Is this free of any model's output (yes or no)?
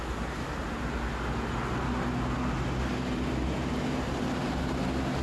yes